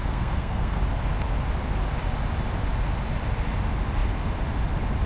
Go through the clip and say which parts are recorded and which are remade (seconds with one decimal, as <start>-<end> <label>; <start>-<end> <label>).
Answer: 0.0-0.8 remade; 0.8-5.1 recorded